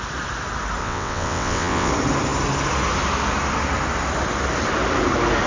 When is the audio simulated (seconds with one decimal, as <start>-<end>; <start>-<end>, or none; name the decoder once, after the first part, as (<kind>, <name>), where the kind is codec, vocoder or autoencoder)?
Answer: 0.8-1.9 (vocoder, WaveNeXt)